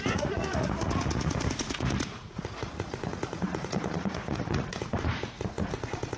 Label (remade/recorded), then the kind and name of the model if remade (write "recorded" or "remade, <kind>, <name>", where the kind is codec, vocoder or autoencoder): remade, vocoder, Vocos